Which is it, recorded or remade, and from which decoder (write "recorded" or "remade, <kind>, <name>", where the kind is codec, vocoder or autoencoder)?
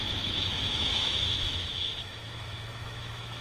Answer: remade, autoencoder, DAC-VAE